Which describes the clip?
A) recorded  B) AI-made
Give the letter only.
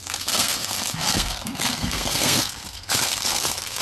B